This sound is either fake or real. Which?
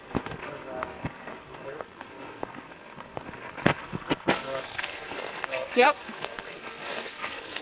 fake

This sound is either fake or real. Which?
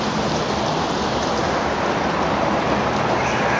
real